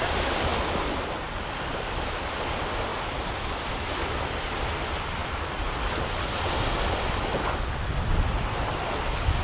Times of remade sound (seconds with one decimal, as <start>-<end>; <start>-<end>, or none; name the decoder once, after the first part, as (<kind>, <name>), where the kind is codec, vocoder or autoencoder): none